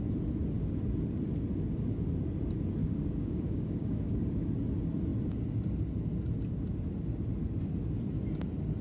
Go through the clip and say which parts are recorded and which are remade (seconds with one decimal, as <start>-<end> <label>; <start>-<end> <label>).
0.0-2.8 recorded; 2.8-4.2 remade; 4.2-8.8 recorded